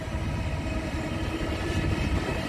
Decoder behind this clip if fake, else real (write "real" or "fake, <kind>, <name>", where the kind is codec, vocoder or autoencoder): fake, vocoder, BigVGAN v2